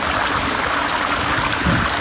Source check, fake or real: real